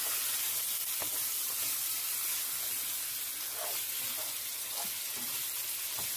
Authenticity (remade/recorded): recorded